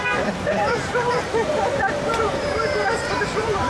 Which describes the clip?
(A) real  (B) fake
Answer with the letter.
B